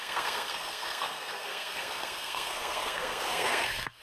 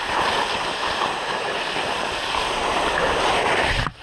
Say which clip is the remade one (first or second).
first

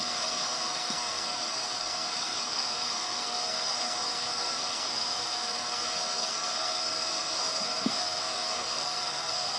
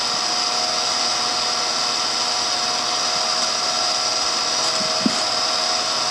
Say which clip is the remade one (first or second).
first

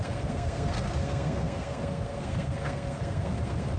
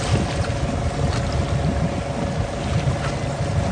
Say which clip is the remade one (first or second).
first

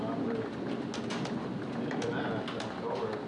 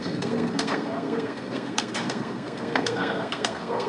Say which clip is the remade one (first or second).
second